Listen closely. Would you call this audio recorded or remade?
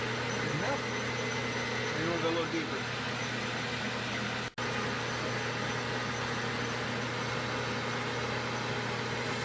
recorded